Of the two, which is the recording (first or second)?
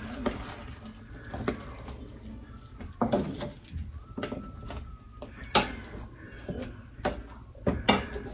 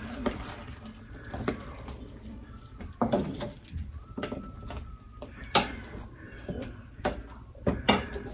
first